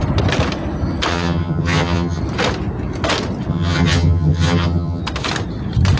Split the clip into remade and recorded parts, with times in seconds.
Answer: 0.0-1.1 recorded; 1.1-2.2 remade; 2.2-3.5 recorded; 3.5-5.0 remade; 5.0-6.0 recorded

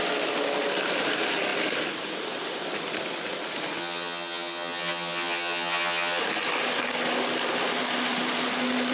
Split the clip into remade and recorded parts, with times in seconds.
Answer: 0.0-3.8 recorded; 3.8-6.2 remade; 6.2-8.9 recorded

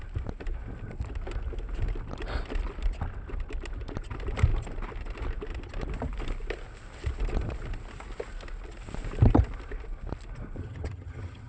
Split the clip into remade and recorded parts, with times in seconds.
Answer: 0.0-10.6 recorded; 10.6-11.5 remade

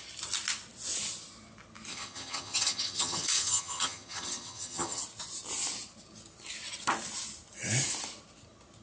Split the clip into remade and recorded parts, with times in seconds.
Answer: 0.0-1.9 recorded; 1.9-5.0 remade; 5.0-8.8 recorded